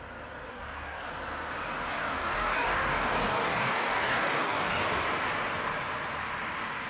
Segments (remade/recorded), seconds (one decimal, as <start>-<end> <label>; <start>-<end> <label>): 0.0-0.5 recorded; 0.5-1.1 remade; 1.1-1.9 recorded; 1.9-4.8 remade; 4.8-6.9 recorded